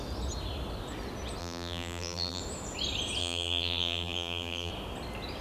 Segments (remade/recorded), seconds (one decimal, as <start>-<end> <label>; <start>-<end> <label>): 0.0-1.4 recorded; 1.4-2.4 remade; 2.4-3.2 recorded; 3.2-4.7 remade; 4.7-5.4 recorded